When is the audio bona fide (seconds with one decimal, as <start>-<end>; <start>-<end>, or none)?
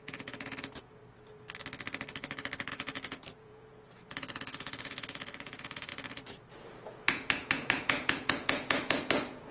1.0-2.7